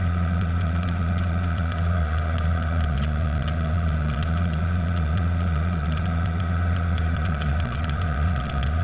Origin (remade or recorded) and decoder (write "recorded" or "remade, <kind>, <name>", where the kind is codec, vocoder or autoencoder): remade, vocoder, Vocos